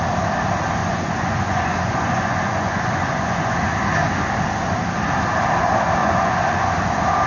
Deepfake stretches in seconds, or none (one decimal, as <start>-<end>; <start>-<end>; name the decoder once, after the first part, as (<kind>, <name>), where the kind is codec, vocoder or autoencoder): 0.8-3.5 (vocoder, Vocos); 6.0-6.7